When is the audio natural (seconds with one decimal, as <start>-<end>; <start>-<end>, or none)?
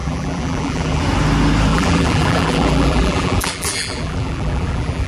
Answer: 1.0-1.7